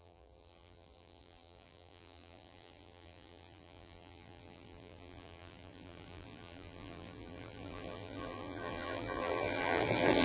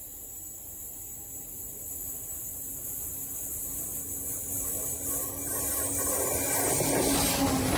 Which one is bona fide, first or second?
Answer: second